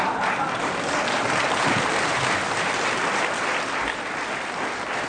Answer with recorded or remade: recorded